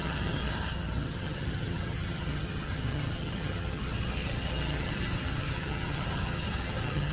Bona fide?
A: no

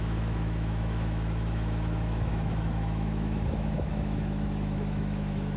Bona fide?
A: no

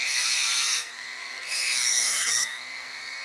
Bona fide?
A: no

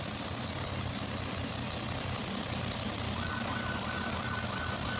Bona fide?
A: yes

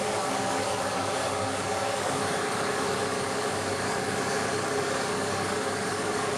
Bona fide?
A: no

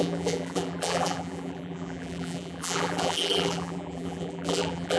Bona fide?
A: no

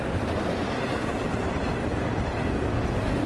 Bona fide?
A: yes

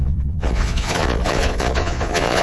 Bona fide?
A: no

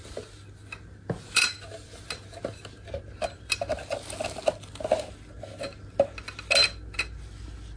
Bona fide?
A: yes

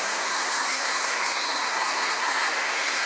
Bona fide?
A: no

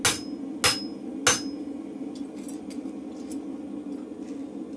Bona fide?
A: yes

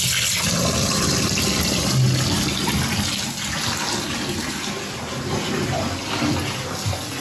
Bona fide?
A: yes